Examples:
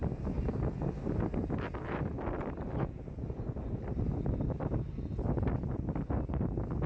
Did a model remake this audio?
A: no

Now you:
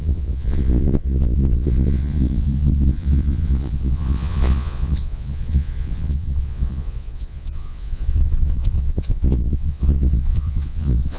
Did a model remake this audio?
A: yes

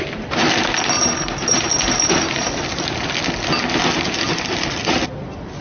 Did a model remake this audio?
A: no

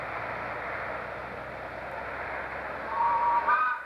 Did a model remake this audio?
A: no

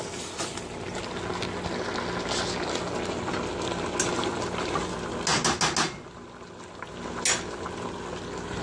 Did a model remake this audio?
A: no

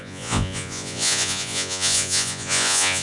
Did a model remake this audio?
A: yes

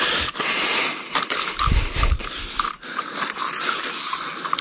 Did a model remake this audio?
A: no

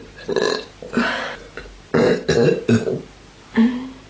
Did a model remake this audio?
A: no